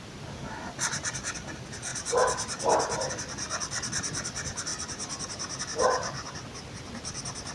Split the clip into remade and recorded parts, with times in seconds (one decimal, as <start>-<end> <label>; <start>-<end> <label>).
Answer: 0.0-1.9 recorded; 1.9-3.1 remade; 3.1-4.7 recorded; 4.7-5.6 remade; 5.6-7.5 recorded